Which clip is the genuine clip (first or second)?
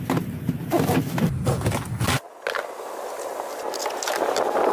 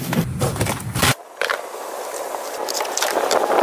first